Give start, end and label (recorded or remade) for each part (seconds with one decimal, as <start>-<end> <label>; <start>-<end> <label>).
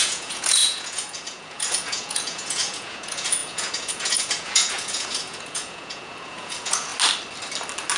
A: 0.0-6.9 remade; 6.9-8.0 recorded